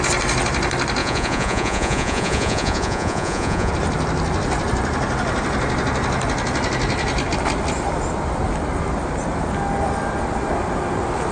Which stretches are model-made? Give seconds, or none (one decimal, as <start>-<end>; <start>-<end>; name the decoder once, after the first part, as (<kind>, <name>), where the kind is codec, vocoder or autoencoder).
1.0-3.7 (vocoder, Vocos)